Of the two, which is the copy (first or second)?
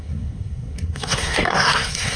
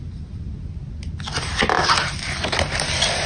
first